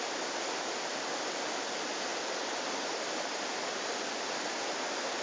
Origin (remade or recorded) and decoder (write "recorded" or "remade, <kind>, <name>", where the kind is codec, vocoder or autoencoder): recorded